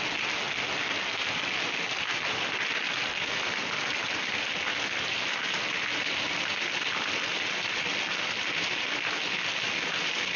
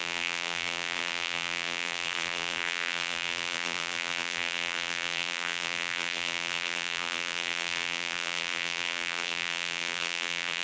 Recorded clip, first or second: first